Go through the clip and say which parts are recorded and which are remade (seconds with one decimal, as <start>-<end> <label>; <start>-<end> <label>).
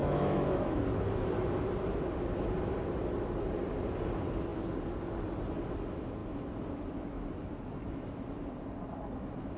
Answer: 0.0-0.8 remade; 0.8-9.6 recorded